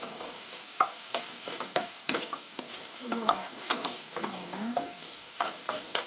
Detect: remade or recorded remade